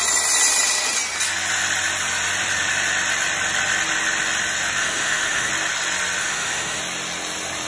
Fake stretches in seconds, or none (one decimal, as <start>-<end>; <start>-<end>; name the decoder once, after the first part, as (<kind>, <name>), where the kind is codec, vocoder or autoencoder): 4.8-5.5 (autoencoder, DAC-VAE); 6.2-6.8